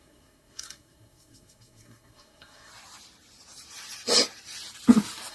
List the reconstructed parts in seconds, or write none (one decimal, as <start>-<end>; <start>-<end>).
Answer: 0.0-2.7